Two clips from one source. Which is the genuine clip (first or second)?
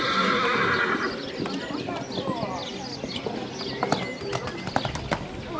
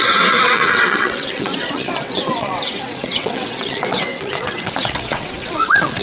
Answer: first